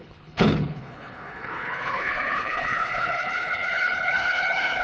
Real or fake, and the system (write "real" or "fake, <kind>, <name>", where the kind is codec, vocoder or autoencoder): fake, codec, HILCodec